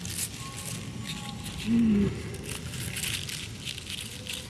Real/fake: real